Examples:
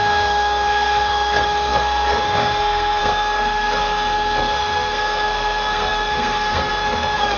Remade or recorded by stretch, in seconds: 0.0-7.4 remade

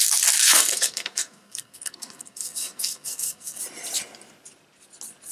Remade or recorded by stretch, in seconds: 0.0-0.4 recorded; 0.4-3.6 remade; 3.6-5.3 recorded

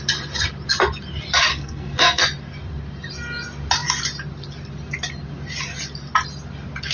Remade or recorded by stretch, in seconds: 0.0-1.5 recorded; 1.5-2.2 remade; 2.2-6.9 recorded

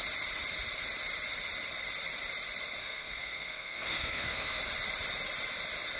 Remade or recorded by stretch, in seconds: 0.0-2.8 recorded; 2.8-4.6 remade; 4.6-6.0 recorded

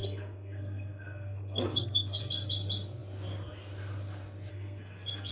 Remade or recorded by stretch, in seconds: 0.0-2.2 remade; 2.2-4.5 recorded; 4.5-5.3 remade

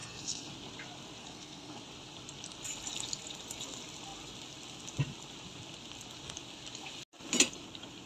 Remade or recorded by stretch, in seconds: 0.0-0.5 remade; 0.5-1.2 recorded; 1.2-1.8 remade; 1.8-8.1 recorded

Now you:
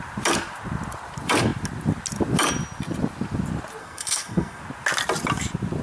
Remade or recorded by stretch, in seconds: 0.0-3.8 recorded; 3.8-4.6 remade; 4.6-5.8 recorded

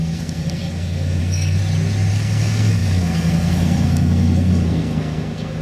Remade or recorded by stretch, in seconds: 0.0-1.6 remade; 1.6-2.1 recorded; 2.1-5.6 remade